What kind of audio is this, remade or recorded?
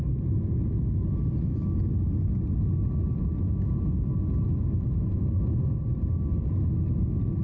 recorded